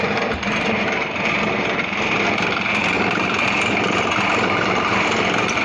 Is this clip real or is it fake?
fake